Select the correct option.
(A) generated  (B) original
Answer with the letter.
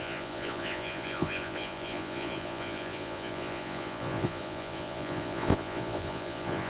A